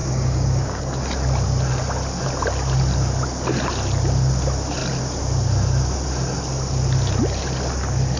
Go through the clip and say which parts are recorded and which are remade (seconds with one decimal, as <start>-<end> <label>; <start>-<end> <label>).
0.0-0.8 remade; 0.8-8.2 recorded